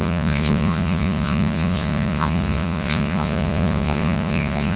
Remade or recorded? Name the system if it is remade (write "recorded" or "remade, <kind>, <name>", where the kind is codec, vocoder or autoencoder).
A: remade, vocoder, Vocos